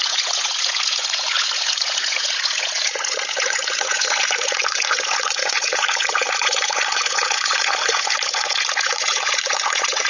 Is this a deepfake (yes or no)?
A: yes